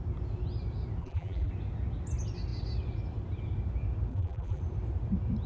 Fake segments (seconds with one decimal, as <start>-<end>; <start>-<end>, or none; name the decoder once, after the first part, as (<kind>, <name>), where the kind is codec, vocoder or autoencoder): 1.0-1.5 (vocoder, BigVGAN v2); 4.1-4.6